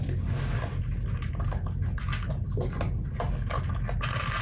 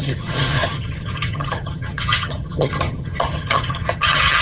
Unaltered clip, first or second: first